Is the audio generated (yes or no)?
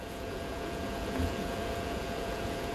yes